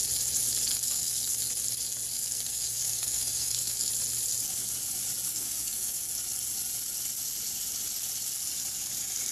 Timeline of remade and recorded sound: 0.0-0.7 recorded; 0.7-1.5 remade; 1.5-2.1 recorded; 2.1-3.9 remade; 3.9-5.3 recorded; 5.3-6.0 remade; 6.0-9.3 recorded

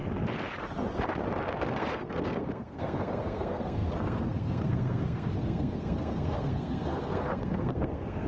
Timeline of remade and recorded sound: 0.0-1.7 recorded; 1.7-8.3 remade

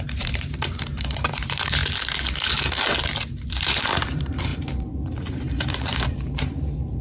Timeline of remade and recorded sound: 0.0-1.8 remade; 1.8-3.0 recorded; 3.0-7.0 remade

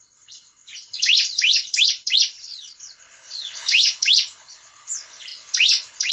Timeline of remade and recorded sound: 0.0-6.1 remade

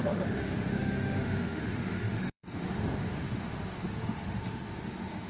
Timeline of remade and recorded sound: 0.0-5.3 remade

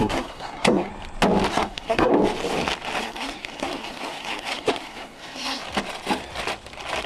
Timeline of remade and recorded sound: 0.0-0.9 remade; 0.9-1.5 recorded; 1.5-2.1 remade; 2.1-3.0 recorded; 3.0-5.6 remade; 5.6-7.1 recorded

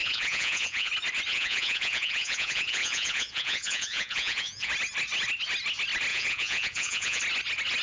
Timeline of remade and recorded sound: 0.0-0.9 remade; 0.9-1.3 recorded; 1.3-4.7 remade; 4.7-6.1 recorded; 6.1-7.2 remade; 7.2-7.8 recorded